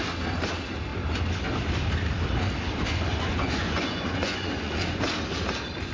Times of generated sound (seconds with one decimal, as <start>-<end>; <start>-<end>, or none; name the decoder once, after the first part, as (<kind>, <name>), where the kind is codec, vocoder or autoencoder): 3.1-5.0 (vocoder, Vocos)